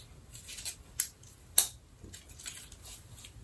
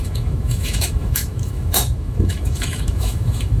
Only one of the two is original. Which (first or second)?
first